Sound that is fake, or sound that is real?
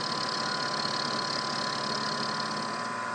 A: real